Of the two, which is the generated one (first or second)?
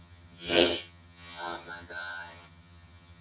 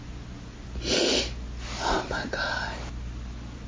first